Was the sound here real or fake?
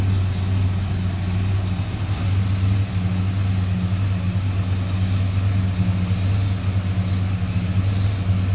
real